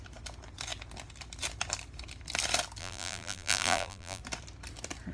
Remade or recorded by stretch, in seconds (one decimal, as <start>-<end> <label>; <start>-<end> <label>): 0.0-2.8 recorded; 2.8-4.2 remade; 4.2-5.1 recorded

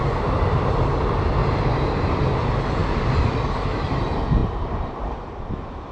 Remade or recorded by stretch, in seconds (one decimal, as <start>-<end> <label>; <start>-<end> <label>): 0.0-1.0 remade; 1.0-1.4 recorded; 1.4-2.2 remade; 2.2-5.9 recorded

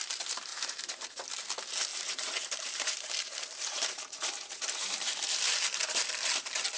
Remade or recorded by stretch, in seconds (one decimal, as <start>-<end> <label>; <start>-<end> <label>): 0.0-0.5 recorded; 0.5-1.2 remade; 1.2-1.9 recorded; 1.9-6.0 remade; 6.0-6.8 recorded

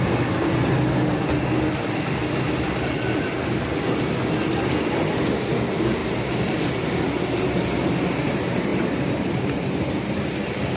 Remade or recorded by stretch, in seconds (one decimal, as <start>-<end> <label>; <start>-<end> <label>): 0.0-6.0 recorded; 6.0-6.6 remade; 6.6-8.7 recorded; 8.7-9.8 remade; 9.8-10.8 recorded